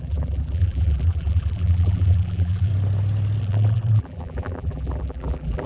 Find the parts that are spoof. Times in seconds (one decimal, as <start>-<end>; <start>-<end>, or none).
0.0-2.7; 3.4-5.7